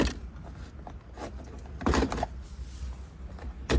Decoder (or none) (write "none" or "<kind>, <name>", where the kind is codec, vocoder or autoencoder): none